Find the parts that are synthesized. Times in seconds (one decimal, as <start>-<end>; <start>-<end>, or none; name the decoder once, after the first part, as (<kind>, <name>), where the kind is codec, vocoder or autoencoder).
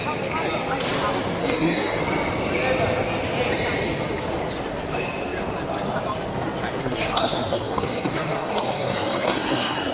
1.4-2.0 (codec, SNAC); 6.8-9.9